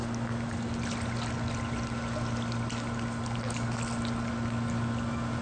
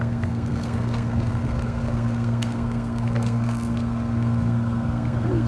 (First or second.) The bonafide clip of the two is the first